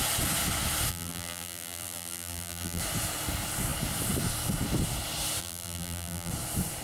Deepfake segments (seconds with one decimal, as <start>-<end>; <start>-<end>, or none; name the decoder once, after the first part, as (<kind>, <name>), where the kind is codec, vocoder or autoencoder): 0.9-2.8 (vocoder, BigVGAN v2); 5.4-6.3